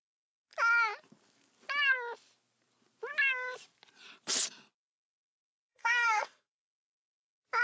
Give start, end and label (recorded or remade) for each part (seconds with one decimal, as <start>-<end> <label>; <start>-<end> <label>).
0.0-5.7 recorded; 5.7-6.7 remade; 6.7-7.6 recorded